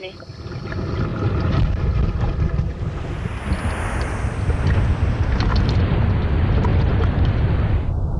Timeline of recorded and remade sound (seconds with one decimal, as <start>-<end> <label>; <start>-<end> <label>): 0.0-6.7 recorded; 6.7-7.2 remade; 7.2-8.2 recorded